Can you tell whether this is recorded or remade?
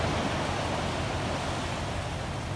recorded